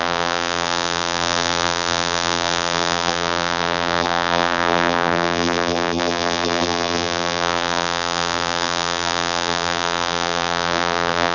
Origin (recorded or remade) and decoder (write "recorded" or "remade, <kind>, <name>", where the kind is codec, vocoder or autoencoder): remade, vocoder, BigVGAN v2